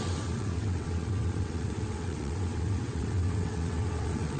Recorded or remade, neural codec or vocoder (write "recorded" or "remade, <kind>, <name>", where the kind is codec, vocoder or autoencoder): remade, vocoder, WaveNeXt